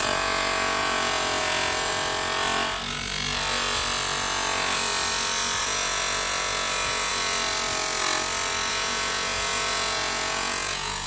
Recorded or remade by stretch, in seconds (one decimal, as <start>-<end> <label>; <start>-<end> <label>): 0.0-1.9 remade; 1.9-5.6 recorded; 5.6-7.1 remade; 7.1-8.7 recorded; 8.7-11.1 remade